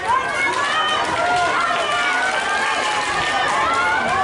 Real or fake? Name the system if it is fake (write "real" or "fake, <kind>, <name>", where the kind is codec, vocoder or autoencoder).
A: real